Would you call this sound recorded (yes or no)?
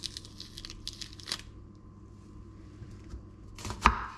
yes